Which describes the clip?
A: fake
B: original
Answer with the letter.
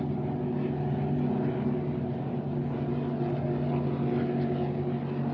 B